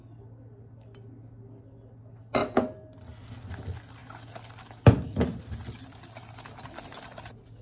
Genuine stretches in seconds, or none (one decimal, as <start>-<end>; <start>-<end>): 0.0-7.6

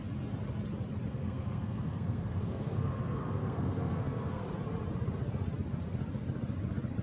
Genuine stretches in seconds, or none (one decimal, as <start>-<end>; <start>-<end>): 0.0-1.1; 4.5-7.0